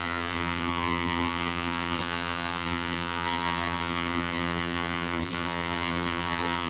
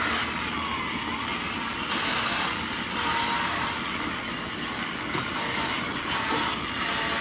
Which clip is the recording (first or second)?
second